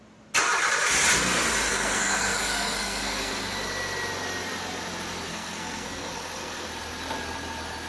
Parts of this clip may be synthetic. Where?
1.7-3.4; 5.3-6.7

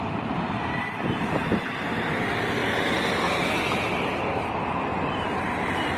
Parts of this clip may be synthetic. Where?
0.0-2.6; 4.5-4.9

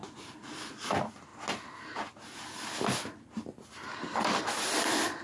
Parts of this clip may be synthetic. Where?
none

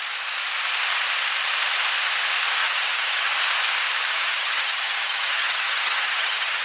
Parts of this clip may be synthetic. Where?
2.6-3.3; 4.1-6.6